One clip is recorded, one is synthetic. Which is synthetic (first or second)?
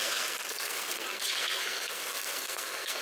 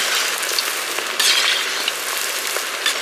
first